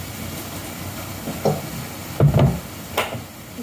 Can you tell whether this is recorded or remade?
recorded